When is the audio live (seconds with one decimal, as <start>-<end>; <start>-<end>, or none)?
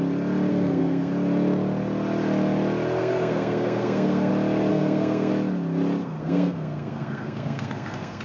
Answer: 0.0-0.5; 1.1-3.0; 4.3-4.7; 5.3-6.0